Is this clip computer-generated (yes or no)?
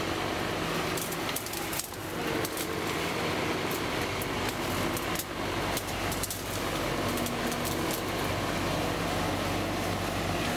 no